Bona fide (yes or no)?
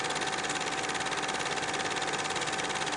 yes